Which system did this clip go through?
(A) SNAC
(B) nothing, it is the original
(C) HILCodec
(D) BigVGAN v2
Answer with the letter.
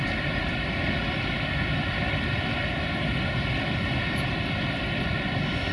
B